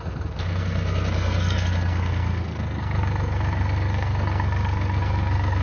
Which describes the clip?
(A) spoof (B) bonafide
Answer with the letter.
A